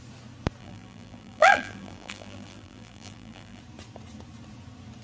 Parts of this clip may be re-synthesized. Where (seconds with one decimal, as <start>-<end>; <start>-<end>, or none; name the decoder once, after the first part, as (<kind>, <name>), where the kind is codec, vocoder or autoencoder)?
0.6-3.6 (vocoder, BigVGAN v2)